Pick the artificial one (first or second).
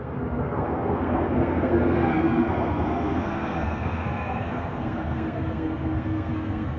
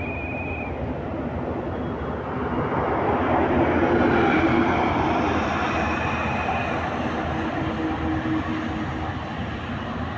first